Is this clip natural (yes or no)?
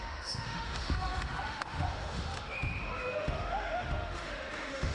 no